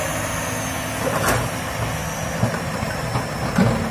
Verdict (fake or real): real